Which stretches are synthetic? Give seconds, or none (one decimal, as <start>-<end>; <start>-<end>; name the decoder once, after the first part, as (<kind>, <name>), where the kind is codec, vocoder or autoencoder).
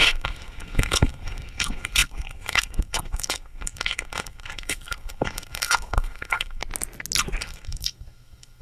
0.0-6.6 (codec, SNAC); 7.4-8.6